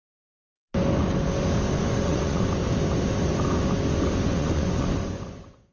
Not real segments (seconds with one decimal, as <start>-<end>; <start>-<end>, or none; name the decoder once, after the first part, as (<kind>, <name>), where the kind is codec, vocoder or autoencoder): 0.0-0.6 (vocoder, Vocos); 1.8-2.6; 4.2-5.7

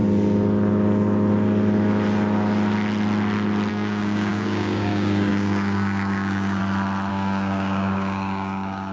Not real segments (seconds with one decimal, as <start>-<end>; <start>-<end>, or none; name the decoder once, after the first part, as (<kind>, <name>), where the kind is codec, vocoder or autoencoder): 3.7-6.6 (codec, DAC); 7.1-8.9

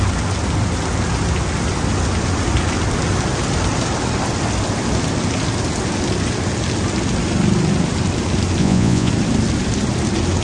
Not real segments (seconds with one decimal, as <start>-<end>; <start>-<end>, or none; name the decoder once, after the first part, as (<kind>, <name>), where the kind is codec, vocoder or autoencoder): 8.6-9.1 (vocoder, Vocos)

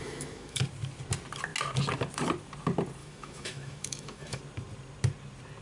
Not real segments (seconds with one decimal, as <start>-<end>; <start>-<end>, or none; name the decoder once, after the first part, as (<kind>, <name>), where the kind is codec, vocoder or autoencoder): 0.0-0.6 (autoencoder, DAC-VAE); 3.0-4.4